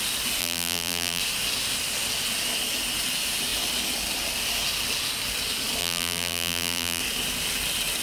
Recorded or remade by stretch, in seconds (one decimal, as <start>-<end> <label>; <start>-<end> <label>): 0.0-0.4 recorded; 0.4-1.2 remade; 1.2-5.8 recorded; 5.8-7.0 remade; 7.0-8.0 recorded